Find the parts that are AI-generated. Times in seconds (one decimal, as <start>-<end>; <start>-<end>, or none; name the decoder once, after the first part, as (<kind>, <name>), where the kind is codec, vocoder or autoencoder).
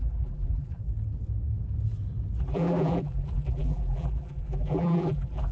0.0-0.8 (vocoder, BigVGAN v2); 2.4-5.5